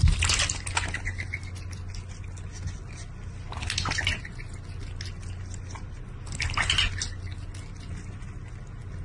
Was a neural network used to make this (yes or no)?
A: no